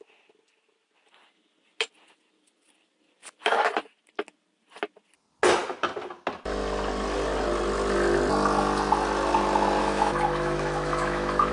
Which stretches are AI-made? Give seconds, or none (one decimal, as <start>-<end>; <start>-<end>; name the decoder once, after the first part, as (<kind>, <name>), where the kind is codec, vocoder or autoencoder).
9.8-11.5 (autoencoder, DAC-VAE)